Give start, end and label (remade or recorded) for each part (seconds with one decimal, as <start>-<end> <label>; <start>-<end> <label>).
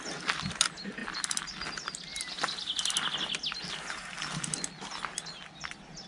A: 0.0-6.1 recorded